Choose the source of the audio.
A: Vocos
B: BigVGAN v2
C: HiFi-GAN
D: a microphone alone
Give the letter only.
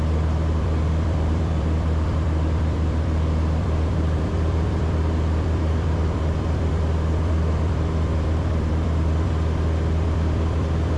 B